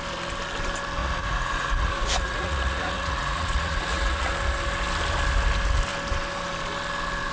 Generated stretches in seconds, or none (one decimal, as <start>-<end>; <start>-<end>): 1.0-4.3